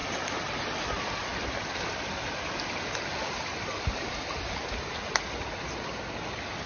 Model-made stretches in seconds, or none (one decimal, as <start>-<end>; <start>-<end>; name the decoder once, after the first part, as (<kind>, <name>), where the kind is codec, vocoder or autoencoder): none